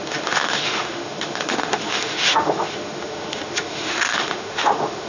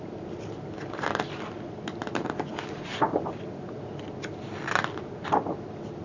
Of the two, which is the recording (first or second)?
second